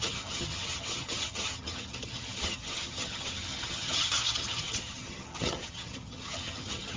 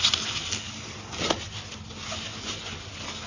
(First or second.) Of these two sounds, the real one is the second